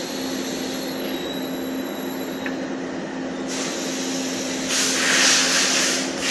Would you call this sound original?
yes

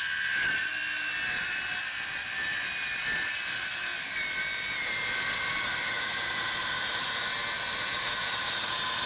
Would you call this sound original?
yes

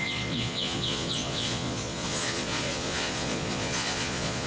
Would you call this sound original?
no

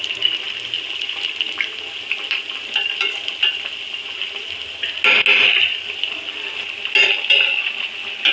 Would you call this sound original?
yes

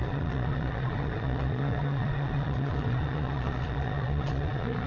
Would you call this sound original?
no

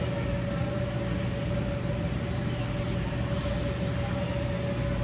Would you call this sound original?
yes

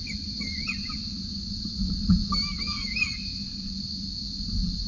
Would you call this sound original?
yes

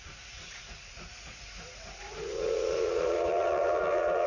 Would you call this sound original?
no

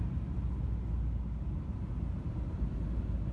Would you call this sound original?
yes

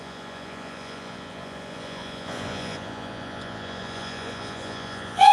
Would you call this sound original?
no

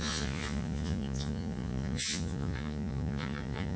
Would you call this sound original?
no